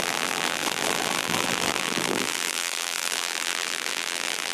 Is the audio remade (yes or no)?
yes